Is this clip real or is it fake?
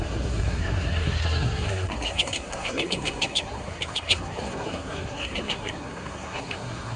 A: fake